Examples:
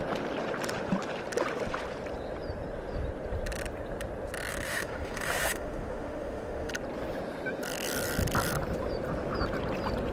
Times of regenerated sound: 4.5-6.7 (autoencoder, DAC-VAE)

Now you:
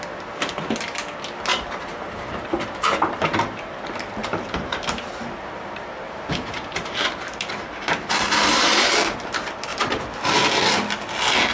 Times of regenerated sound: 1.5-3.8 (vocoder, BigVGAN v2); 4.2-8.9; 9.7-10.3

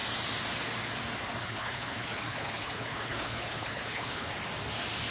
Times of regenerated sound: 1.4-4.3 (codec, HILCodec)